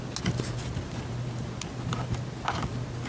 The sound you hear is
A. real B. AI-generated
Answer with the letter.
A